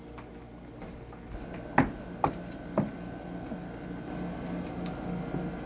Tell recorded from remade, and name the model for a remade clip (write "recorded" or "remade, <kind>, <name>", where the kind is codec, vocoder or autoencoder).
recorded